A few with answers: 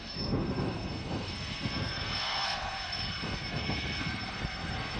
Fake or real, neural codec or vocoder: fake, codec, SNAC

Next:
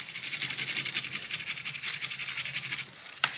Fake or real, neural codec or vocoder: real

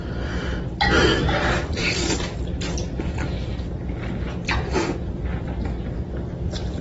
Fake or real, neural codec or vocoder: real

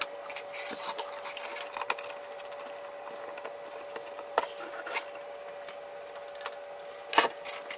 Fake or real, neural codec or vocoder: real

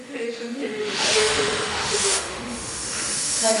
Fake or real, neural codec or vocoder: fake, autoencoder, DAC-VAE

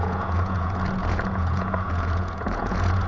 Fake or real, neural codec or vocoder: fake, vocoder, Vocos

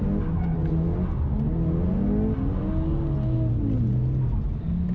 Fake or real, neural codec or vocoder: real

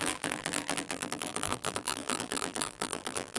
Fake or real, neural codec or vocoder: fake, vocoder, BigVGAN v2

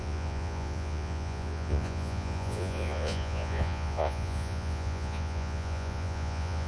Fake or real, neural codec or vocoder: fake, vocoder, Vocos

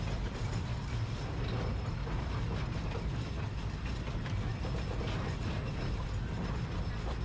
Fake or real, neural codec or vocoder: real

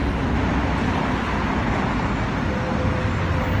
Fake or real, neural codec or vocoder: real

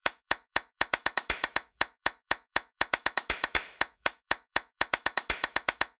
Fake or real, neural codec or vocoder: fake, autoencoder, DAC-VAE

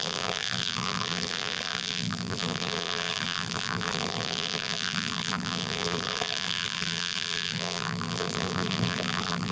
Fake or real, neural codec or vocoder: fake, vocoder, BigVGAN v2